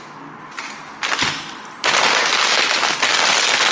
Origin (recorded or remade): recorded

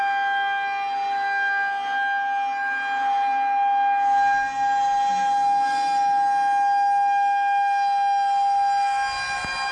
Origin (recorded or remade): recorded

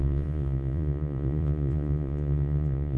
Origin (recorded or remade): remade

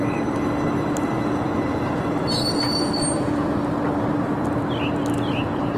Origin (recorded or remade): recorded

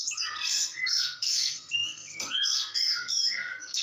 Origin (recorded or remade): remade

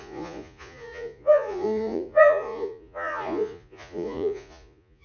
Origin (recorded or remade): remade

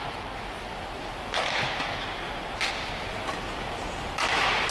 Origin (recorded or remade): recorded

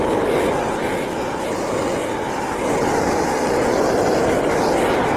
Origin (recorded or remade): recorded